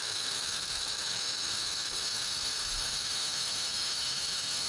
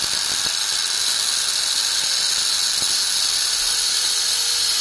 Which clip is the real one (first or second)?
second